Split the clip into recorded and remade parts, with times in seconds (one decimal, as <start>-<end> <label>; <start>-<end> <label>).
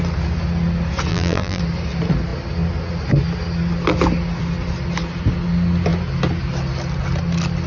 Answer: 0.0-1.1 recorded; 1.1-1.6 remade; 1.6-7.7 recorded